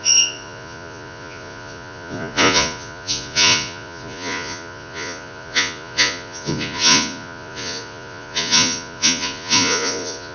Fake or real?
fake